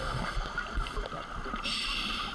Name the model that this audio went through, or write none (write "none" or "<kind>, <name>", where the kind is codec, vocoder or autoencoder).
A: vocoder, BigVGAN v2